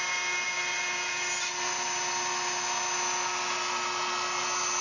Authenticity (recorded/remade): recorded